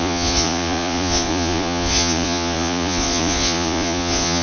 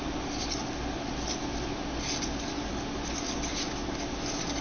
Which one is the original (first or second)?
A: second